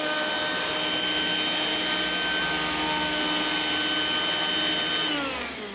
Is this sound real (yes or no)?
yes